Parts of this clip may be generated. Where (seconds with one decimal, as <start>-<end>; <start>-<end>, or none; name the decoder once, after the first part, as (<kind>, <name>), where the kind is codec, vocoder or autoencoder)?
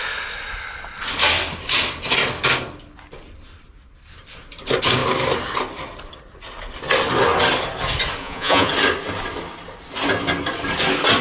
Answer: 8.2-8.7 (vocoder, Vocos)